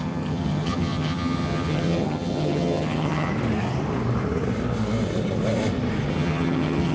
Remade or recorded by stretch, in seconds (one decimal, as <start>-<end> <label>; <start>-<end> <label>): 0.0-3.3 remade; 3.3-6.1 recorded; 6.1-6.9 remade